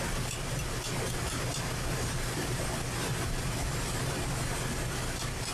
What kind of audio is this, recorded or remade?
recorded